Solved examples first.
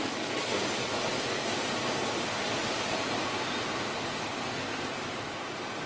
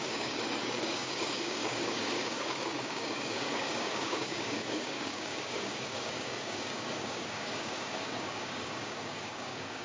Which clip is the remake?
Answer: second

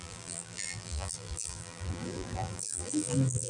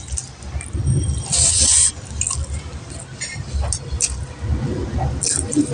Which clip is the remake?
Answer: first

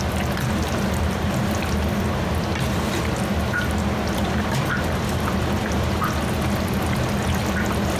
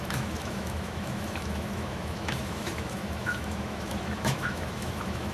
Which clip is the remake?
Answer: second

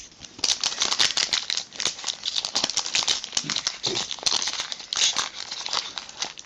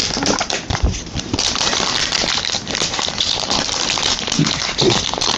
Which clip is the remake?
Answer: second